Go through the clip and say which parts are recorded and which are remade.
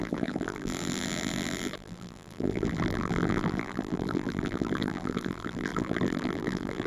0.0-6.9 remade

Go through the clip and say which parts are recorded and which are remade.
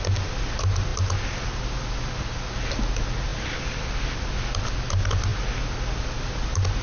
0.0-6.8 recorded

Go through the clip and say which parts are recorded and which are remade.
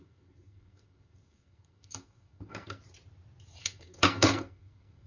0.0-2.8 remade; 2.8-3.6 recorded; 3.6-5.1 remade